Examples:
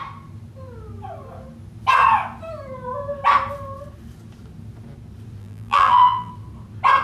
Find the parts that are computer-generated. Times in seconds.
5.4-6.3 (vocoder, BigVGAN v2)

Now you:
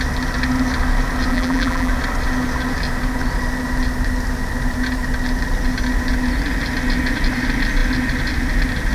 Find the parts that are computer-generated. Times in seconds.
1.3-1.9 (vocoder, BigVGAN v2)

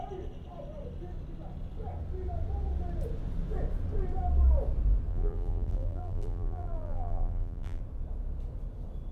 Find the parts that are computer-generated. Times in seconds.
5.1-7.8 (vocoder, BigVGAN v2)

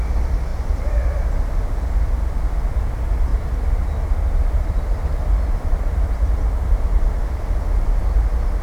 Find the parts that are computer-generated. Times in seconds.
3.3-7.2 (vocoder, BigVGAN v2)

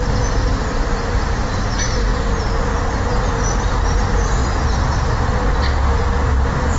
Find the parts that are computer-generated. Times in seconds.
0.0-2.1 (vocoder, BigVGAN v2); 2.9-4.4